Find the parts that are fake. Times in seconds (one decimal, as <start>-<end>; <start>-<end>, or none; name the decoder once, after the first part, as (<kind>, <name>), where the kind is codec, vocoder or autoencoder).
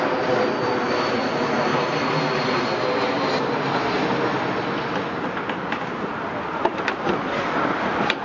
none